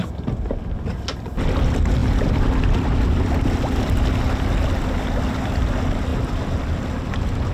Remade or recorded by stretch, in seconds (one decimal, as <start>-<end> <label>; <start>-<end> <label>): 0.0-2.0 recorded; 2.0-4.2 remade; 4.2-6.1 recorded; 6.1-7.5 remade